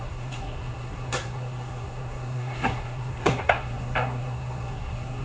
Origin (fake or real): fake